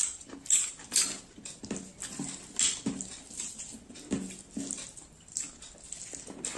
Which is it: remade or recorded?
recorded